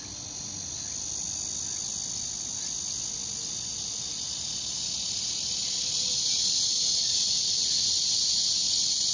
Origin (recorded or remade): recorded